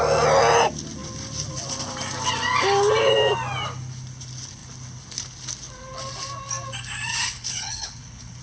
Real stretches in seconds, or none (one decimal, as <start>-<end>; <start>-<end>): 0.0-7.2